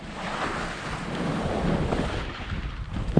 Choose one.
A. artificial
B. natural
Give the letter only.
B